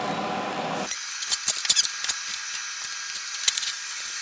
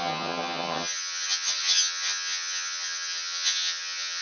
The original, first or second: first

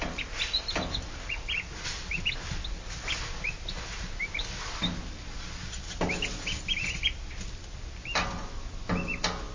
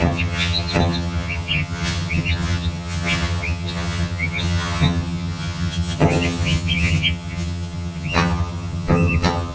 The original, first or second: first